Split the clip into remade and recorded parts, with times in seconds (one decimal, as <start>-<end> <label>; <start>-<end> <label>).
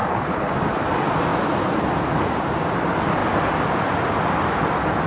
0.0-0.5 remade; 0.5-5.1 recorded